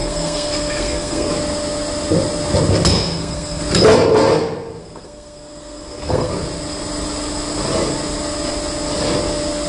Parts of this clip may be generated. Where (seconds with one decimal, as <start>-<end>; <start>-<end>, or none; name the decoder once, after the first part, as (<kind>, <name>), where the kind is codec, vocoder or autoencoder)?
0.0-1.3 (codec, SNAC); 2.9-3.6; 4.8-6.3